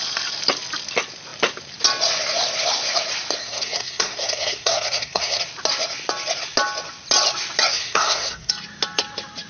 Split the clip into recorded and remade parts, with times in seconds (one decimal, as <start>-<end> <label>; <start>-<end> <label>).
0.0-3.4 recorded; 3.4-5.4 remade; 5.4-7.7 recorded; 7.7-8.5 remade; 8.5-9.5 recorded